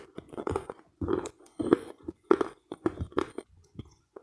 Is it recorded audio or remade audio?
remade